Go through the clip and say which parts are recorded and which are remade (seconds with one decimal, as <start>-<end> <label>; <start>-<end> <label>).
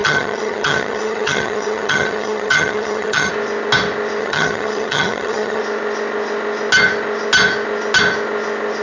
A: 0.0-3.3 remade; 3.3-4.2 recorded; 4.2-5.6 remade; 5.6-8.8 recorded